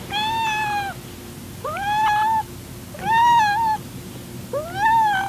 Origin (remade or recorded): recorded